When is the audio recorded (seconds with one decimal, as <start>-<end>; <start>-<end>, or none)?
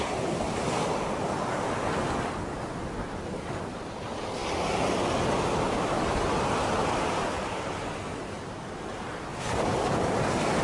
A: 0.0-10.6